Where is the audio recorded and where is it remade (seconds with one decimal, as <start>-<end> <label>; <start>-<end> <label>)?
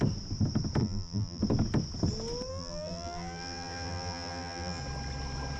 0.0-0.8 recorded; 0.8-1.4 remade; 1.4-2.5 recorded; 2.5-4.8 remade; 4.8-5.6 recorded